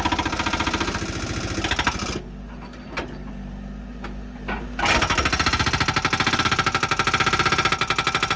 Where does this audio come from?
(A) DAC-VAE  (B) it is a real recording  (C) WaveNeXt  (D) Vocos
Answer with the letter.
B